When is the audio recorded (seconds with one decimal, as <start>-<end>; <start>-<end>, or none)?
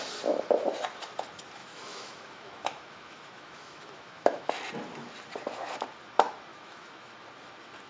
0.0-1.6; 4.5-6.5; 7.1-7.9